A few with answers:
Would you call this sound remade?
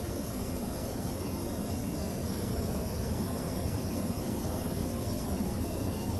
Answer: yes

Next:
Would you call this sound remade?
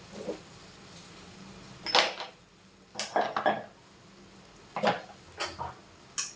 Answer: no